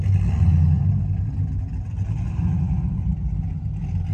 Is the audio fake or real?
real